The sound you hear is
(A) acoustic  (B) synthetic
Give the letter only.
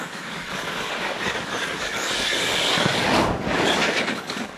B